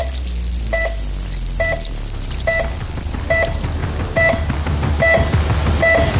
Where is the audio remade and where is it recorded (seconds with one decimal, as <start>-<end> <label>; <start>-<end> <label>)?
0.0-6.2 recorded